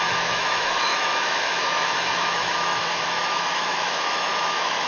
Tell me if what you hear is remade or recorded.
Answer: remade